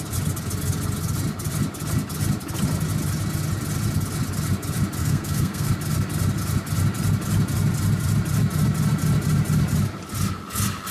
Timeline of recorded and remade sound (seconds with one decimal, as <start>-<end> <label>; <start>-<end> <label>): 0.0-5.0 recorded; 5.0-5.7 remade; 5.7-10.9 recorded